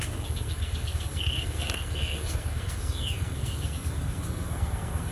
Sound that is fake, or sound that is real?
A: fake